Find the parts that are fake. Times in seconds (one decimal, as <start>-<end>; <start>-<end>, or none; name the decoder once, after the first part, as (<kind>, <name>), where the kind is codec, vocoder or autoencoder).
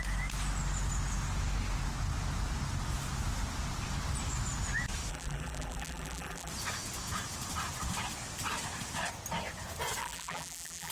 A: 5.1-6.5 (vocoder, BigVGAN v2); 10.0-10.9